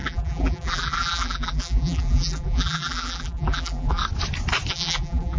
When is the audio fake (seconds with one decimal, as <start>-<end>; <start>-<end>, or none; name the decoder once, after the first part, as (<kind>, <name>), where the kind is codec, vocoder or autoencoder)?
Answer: 0.0-4.0 (vocoder, BigVGAN v2); 4.7-5.4